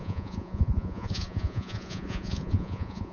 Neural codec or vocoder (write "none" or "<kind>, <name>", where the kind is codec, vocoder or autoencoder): vocoder, Vocos